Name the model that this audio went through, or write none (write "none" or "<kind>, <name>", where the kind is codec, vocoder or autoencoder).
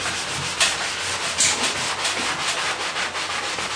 none